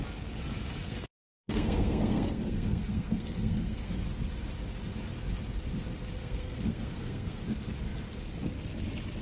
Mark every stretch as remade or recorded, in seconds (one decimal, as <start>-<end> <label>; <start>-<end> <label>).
0.0-0.8 recorded; 0.8-3.9 remade; 3.9-6.2 recorded; 6.2-7.4 remade; 7.4-9.2 recorded